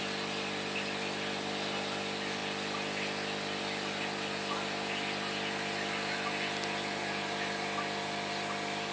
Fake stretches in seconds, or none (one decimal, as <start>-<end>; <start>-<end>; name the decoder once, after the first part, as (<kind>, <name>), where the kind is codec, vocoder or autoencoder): none